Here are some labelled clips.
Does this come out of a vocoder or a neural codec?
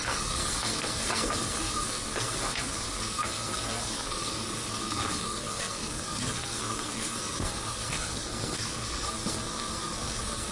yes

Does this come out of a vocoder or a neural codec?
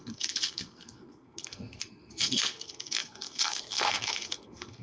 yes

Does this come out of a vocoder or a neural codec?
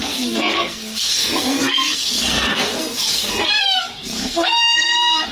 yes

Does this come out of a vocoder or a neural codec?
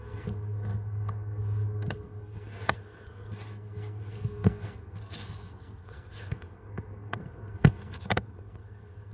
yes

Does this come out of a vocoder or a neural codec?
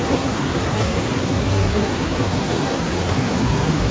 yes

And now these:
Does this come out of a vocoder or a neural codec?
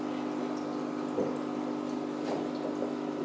no